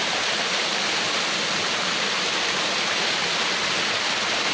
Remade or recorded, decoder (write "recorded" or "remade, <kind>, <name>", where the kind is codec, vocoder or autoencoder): recorded